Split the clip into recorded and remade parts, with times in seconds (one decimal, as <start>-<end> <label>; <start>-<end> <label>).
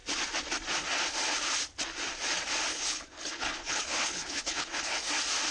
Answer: 0.0-2.7 recorded; 2.7-5.1 remade; 5.1-5.5 recorded